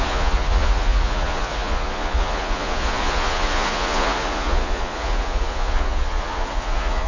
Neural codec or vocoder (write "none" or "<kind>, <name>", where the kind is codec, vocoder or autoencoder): vocoder, Vocos